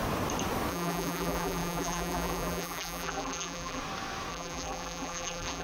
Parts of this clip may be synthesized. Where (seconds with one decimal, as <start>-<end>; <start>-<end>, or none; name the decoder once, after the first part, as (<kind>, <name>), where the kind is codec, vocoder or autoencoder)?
0.7-3.8 (vocoder, BigVGAN v2); 4.3-5.6